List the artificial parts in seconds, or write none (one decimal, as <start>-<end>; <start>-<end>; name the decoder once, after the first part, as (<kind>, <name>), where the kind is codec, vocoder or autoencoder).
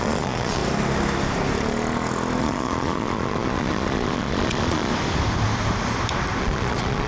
0.0-0.6 (vocoder, Vocos); 2.4-4.9; 6.4-7.1